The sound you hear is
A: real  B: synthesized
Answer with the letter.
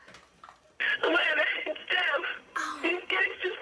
B